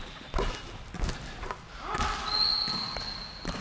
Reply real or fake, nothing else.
real